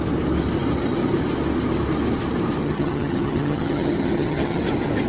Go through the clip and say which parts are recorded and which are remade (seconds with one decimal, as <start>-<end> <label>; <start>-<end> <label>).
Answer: 0.0-2.6 recorded; 2.6-4.6 remade; 4.6-5.1 recorded